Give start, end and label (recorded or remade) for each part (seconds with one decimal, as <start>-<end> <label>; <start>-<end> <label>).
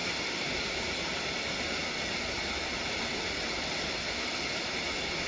0.0-5.3 recorded